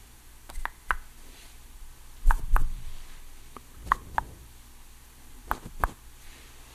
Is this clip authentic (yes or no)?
yes